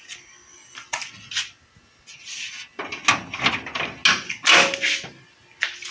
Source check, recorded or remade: recorded